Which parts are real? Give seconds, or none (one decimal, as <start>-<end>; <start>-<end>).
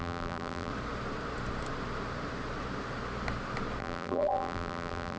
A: 0.7-3.8